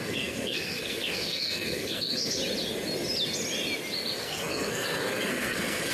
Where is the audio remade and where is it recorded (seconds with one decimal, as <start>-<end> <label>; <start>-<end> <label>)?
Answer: 0.0-2.4 remade; 2.4-4.2 recorded; 4.2-5.9 remade